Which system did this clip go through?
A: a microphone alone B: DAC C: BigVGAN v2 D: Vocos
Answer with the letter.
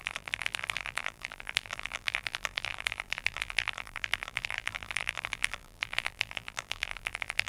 C